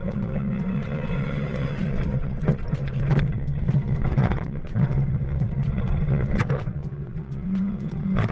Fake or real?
fake